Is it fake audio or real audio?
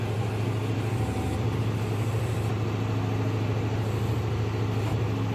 real